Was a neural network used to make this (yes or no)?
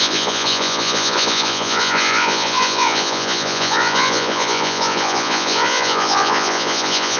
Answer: yes